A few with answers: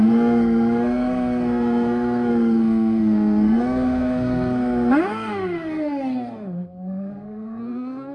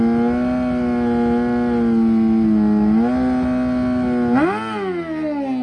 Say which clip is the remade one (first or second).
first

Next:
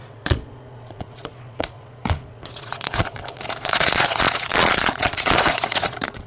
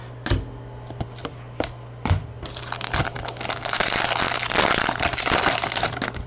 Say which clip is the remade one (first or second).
first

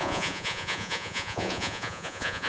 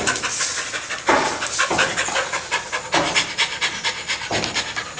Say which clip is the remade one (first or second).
first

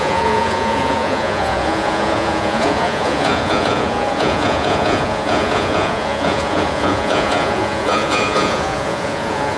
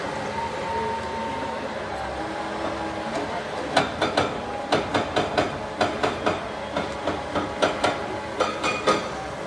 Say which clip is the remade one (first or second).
first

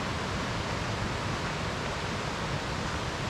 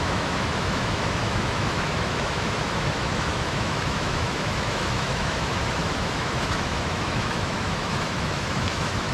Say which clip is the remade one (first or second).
second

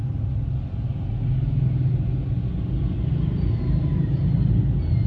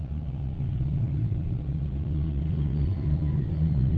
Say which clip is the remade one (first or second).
second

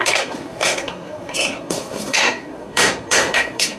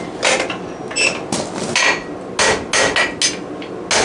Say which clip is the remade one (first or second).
first